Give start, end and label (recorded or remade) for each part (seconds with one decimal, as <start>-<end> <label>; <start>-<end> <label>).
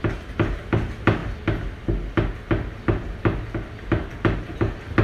0.0-5.0 recorded